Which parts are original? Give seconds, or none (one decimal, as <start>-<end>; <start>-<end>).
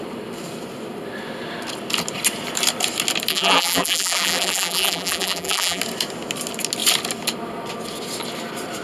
0.0-3.3; 5.8-8.8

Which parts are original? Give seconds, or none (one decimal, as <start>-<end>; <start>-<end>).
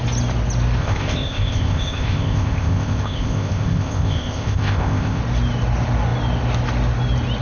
0.0-0.8; 5.2-7.4